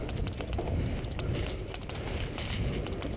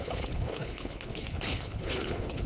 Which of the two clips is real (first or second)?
first